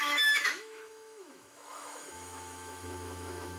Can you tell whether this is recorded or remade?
remade